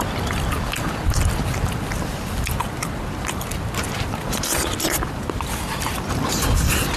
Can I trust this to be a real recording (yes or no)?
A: yes